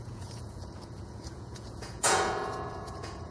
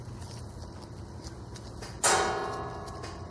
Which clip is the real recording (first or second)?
second